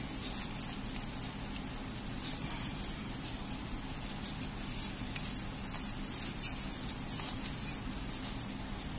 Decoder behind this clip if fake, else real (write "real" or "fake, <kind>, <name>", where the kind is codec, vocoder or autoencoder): real